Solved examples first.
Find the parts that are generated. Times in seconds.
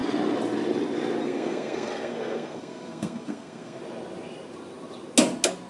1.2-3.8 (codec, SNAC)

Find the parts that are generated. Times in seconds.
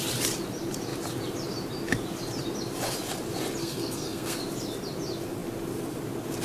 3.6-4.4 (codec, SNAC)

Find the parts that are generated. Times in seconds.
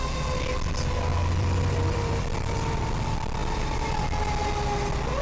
1.1-2.8 (vocoder, BigVGAN v2); 3.4-4.0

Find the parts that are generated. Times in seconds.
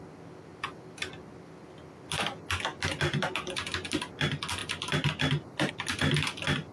none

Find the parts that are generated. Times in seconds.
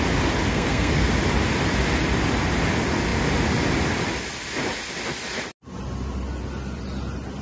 0.5-1.1 (codec, SNAC)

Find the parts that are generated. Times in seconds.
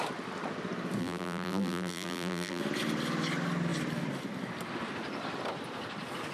1.0-2.6 (vocoder, BigVGAN v2)